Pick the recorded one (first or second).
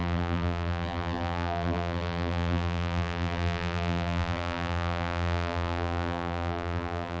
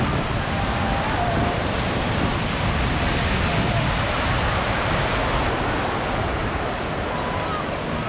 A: second